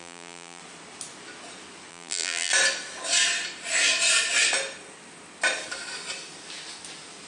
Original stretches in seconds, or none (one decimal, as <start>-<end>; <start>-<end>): 0.6-1.9; 2.5-7.3